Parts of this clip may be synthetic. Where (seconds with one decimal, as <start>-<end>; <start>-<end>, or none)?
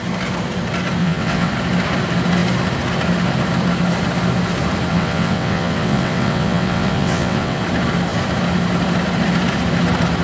1.0-1.5; 4.9-7.6